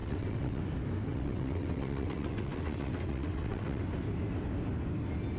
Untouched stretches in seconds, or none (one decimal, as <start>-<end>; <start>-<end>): 0.6-1.1; 3.8-5.4